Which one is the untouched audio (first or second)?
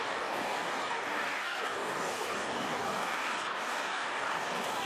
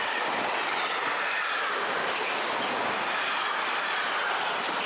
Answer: second